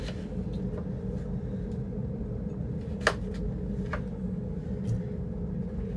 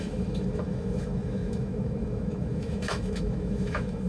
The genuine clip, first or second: first